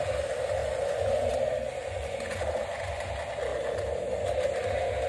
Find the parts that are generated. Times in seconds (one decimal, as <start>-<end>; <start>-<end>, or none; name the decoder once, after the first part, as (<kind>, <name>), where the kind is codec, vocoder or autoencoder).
0.6-1.3 (vocoder, Vocos); 1.8-3.1

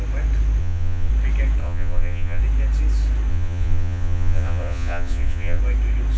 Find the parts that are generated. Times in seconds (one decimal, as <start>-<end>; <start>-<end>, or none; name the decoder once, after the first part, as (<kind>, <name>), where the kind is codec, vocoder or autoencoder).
0.6-1.1 (vocoder, Vocos); 1.6-2.4; 3.3-5.6

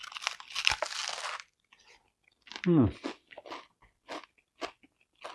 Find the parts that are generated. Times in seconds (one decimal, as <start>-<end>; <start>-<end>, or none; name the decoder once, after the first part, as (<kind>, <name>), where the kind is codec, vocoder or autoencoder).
none

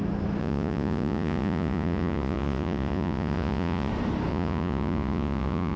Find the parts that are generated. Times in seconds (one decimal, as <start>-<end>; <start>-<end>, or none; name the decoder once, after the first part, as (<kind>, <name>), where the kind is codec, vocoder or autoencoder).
0.4-3.9 (vocoder, Vocos); 4.3-5.8

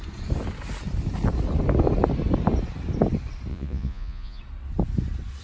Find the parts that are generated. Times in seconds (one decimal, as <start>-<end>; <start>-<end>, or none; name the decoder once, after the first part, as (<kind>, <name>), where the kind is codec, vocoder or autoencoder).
3.5-4.4 (vocoder, Vocos)

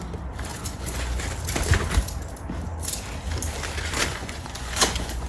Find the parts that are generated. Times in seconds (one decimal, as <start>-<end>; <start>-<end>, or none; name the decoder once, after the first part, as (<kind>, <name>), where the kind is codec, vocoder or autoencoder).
0.5-1.2 (vocoder, Vocos); 4.1-5.3

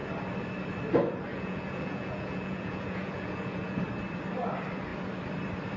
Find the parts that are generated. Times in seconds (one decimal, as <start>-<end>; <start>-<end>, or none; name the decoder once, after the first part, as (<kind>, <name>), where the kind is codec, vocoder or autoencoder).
1.3-3.8 (vocoder, Vocos)